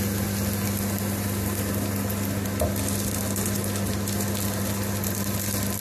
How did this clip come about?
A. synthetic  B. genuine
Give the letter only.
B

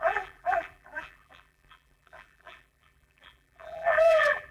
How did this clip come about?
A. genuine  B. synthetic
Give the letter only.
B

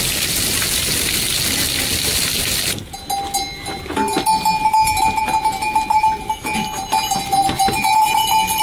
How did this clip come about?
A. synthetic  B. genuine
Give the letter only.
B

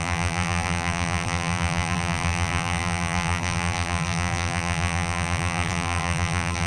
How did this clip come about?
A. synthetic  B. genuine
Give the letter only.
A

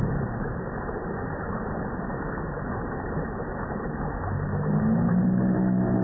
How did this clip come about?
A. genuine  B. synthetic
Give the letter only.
A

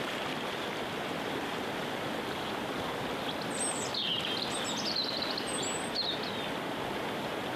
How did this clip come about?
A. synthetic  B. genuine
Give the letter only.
B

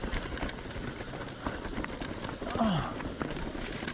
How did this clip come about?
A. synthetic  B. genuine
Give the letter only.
B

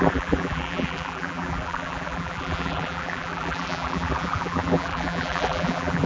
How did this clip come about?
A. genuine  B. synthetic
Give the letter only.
B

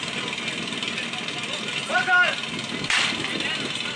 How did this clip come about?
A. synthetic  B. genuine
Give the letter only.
B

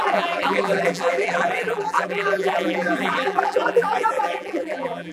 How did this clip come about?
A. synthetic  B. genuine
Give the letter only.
A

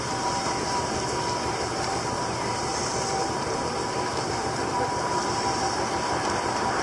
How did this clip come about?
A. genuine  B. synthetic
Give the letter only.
B